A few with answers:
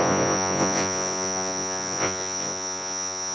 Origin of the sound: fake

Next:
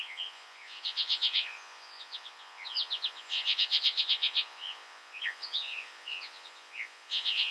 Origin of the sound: fake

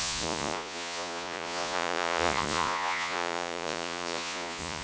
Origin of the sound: fake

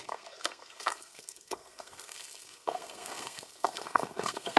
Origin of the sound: fake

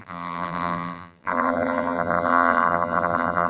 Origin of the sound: fake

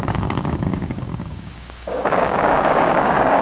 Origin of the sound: fake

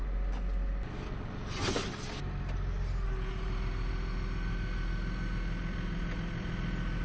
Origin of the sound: real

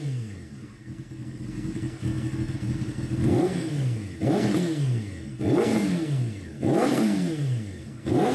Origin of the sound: fake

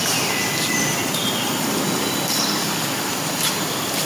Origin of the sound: real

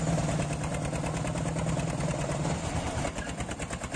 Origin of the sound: real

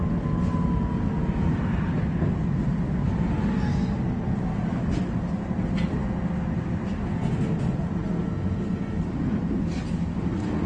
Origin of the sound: real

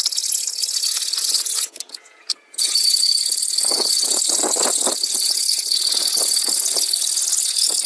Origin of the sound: fake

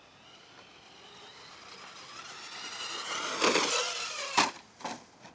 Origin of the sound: real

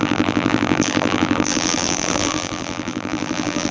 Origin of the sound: fake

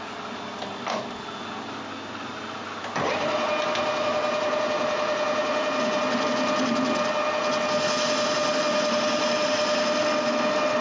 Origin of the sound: real